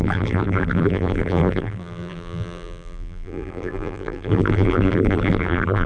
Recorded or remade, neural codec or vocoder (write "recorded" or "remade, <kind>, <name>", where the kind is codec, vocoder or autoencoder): remade, vocoder, BigVGAN v2